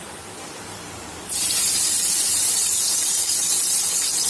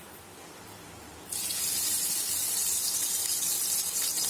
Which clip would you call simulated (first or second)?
first